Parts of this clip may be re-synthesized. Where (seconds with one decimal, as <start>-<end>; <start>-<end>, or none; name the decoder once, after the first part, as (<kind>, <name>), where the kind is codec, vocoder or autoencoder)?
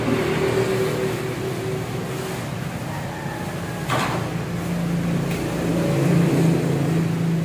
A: 5.7-6.3 (vocoder, BigVGAN v2)